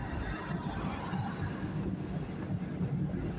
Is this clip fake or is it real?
real